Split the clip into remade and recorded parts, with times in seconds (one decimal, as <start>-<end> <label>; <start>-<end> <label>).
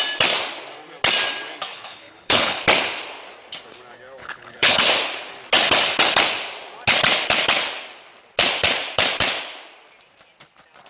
0.0-1.7 recorded; 1.7-2.6 remade; 2.6-4.2 recorded; 4.2-4.8 remade; 4.8-10.9 recorded